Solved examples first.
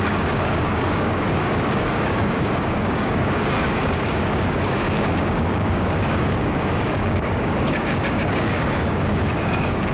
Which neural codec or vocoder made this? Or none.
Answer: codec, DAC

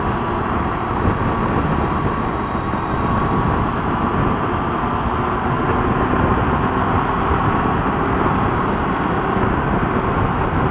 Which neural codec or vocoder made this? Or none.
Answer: none